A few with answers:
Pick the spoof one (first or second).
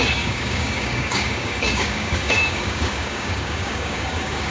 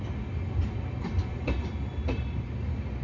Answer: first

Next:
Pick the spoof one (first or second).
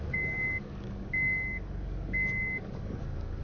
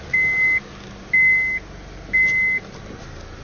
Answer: first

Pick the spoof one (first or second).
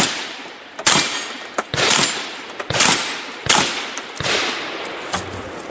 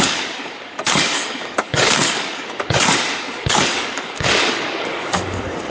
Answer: second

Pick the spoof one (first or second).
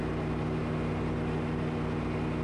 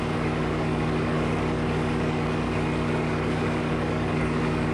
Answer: second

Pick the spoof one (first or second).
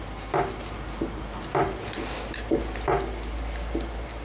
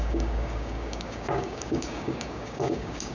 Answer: second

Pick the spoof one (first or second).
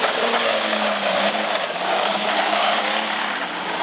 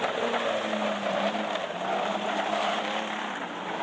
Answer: first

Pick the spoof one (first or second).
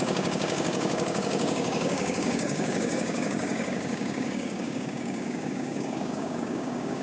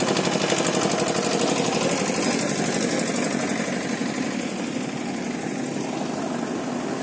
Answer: first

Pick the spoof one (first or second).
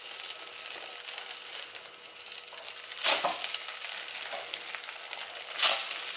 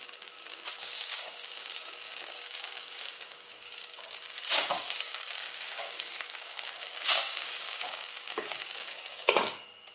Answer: second